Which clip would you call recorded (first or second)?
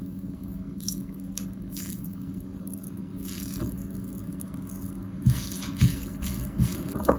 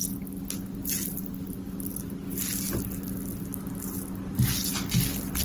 second